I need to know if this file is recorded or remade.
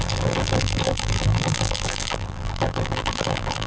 remade